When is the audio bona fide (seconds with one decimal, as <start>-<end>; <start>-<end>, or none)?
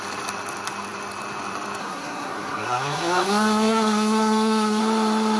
0.0-1.8; 4.8-5.4